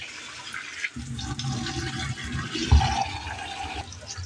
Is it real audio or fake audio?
real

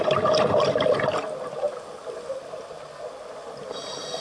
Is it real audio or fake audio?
real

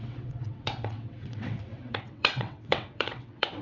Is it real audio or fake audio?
fake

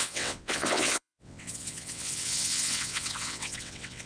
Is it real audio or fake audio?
fake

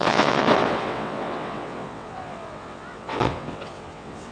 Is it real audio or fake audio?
fake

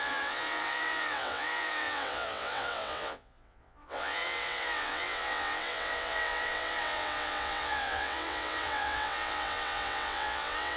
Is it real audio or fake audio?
fake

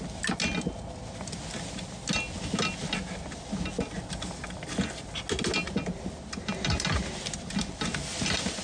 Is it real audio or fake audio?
real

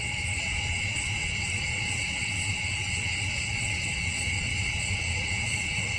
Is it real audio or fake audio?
fake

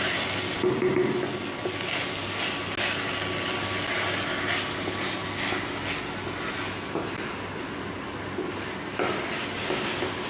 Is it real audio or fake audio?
real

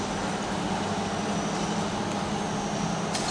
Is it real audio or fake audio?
real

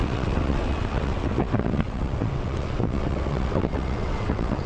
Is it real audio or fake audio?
fake